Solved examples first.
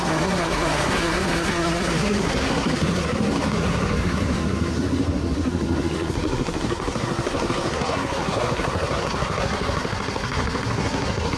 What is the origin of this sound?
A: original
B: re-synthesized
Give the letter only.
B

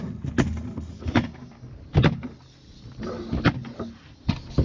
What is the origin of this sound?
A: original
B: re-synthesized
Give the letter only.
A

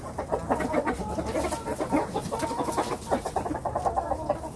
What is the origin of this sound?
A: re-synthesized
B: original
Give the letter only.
B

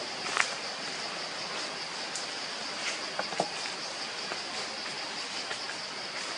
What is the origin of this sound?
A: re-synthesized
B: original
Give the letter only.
B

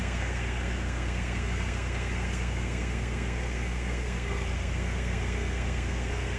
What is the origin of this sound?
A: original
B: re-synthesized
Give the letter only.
B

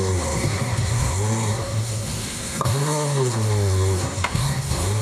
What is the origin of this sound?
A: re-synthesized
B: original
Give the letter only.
A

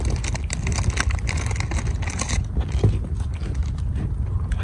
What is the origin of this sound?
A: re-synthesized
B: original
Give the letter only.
B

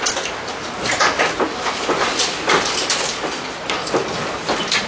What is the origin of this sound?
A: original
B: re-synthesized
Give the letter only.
A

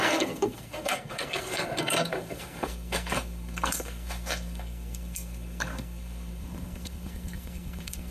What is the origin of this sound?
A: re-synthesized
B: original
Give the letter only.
A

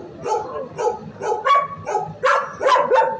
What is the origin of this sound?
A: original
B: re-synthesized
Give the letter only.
A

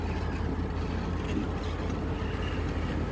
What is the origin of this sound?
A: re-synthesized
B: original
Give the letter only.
B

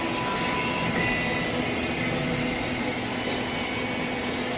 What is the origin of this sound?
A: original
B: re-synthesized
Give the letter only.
A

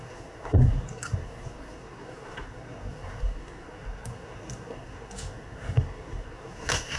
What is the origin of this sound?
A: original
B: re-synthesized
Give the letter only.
B